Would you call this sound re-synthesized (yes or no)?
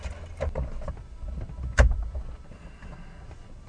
no